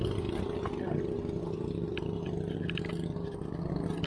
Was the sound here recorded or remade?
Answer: recorded